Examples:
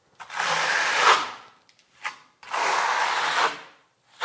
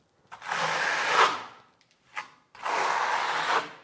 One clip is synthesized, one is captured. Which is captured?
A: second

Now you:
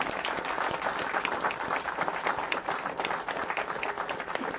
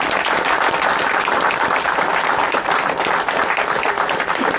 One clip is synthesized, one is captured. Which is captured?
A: first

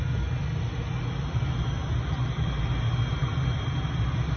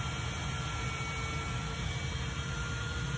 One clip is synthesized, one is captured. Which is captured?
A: second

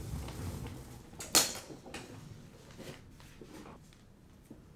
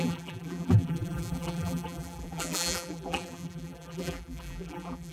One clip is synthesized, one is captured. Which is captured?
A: first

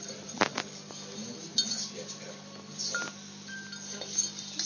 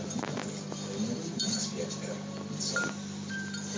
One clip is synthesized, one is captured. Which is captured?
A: first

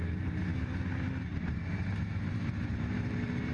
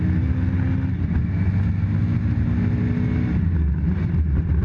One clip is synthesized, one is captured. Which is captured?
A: second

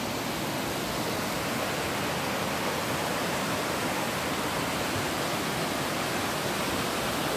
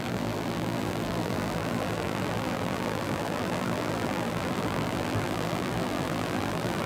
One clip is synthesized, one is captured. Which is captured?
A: first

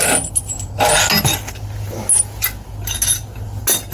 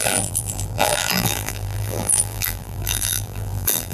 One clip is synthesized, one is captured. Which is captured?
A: first